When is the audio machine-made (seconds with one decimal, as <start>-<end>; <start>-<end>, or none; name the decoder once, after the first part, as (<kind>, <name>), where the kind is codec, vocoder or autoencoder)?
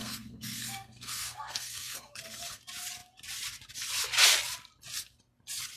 0.0-2.6 (codec, SNAC)